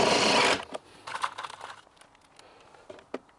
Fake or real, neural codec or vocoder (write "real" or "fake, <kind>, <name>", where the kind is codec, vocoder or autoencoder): real